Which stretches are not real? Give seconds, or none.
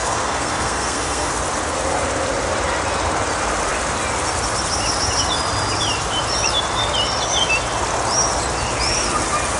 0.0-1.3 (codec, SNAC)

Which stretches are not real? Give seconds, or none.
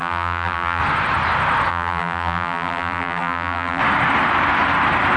0.0-0.8 (vocoder, BigVGAN v2); 1.7-3.8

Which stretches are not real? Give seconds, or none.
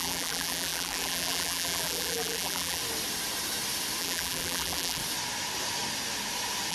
0.0-2.8 (vocoder, BigVGAN v2); 4.0-5.0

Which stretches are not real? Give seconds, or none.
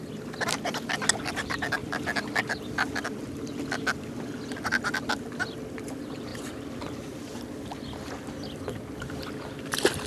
1.8-3.2 (vocoder, BigVGAN v2)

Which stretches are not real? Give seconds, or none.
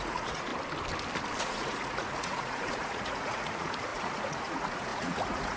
0.0-0.5 (vocoder, Vocos); 1.4-5.6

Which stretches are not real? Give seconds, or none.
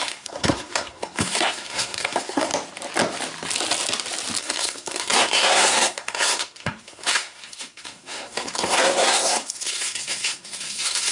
0.0-2.5 (codec, SNAC); 4.4-11.1